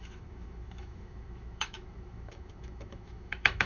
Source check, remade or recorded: remade